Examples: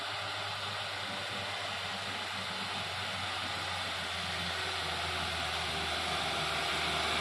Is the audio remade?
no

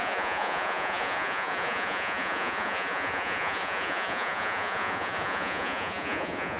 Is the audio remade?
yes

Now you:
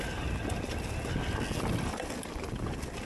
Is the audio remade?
no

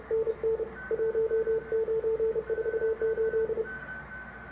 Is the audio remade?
no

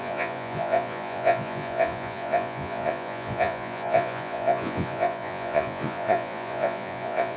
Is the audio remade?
yes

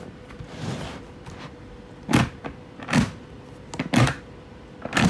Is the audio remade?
no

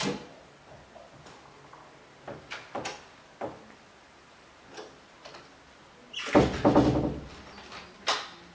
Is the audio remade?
no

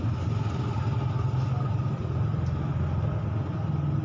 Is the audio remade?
no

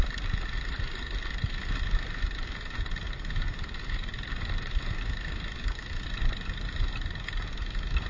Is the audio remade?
no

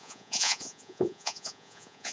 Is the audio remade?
yes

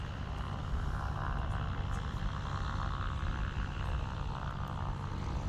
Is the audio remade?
no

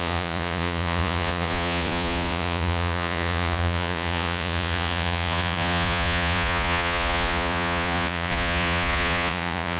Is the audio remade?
yes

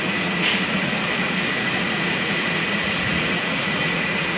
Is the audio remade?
yes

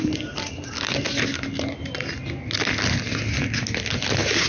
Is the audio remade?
no